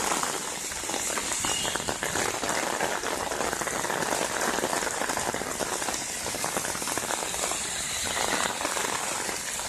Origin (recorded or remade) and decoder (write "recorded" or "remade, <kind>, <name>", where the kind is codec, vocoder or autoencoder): remade, vocoder, BigVGAN v2